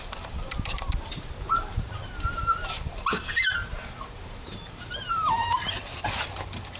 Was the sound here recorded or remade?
remade